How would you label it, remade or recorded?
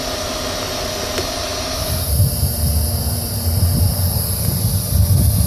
recorded